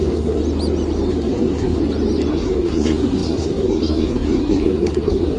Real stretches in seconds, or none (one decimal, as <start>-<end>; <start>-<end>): 0.4-1.1; 1.8-2.3